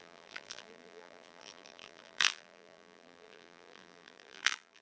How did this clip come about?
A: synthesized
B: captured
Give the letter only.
A